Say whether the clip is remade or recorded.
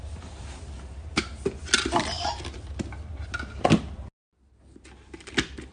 recorded